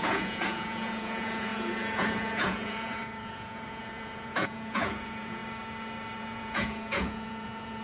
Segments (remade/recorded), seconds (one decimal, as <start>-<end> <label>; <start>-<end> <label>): 0.0-5.4 remade; 5.4-6.2 recorded; 6.2-7.8 remade